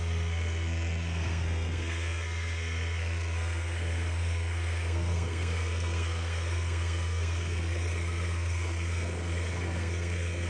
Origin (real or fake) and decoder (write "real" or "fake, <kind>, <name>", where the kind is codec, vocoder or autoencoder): fake, codec, SNAC